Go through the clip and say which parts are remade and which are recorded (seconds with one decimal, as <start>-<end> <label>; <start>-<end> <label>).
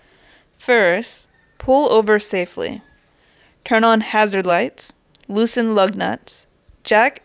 0.0-4.5 recorded; 4.5-6.0 remade; 6.0-7.2 recorded